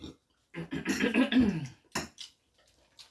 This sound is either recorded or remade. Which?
recorded